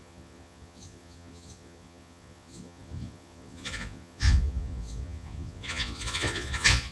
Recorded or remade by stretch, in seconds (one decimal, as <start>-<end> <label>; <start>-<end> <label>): 0.0-6.9 remade